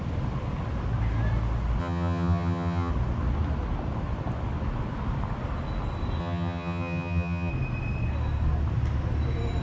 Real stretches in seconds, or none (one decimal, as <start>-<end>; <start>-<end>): 0.0-1.8; 2.9-6.2; 7.5-9.6